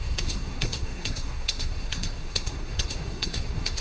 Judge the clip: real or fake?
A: fake